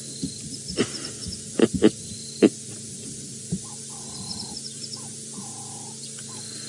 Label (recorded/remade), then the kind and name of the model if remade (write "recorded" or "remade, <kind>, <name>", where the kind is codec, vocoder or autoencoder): recorded